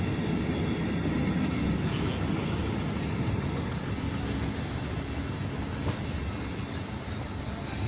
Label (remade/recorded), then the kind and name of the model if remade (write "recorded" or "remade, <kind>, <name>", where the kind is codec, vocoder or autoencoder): recorded